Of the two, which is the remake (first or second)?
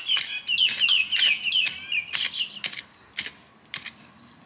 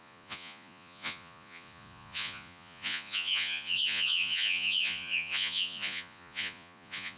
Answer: second